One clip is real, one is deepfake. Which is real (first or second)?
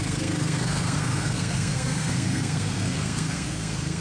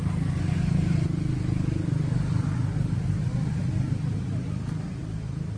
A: second